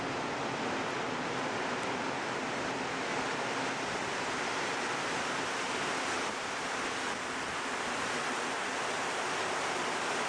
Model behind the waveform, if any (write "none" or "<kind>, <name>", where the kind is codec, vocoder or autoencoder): none